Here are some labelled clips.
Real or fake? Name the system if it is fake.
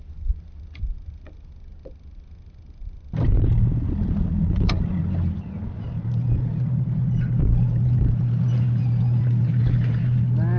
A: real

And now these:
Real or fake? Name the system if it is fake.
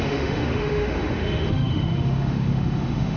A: fake, autoencoder, DAC-VAE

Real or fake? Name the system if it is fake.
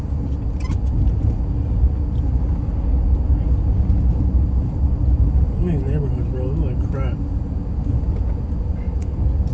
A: real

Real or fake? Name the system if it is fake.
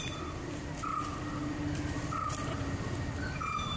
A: real